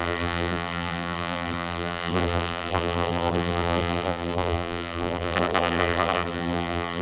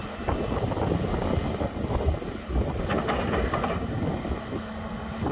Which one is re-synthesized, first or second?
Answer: first